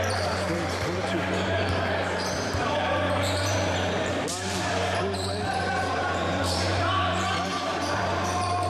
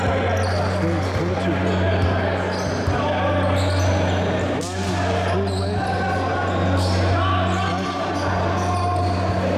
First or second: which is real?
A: second